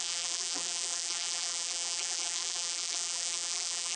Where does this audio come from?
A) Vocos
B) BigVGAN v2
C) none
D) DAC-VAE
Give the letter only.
B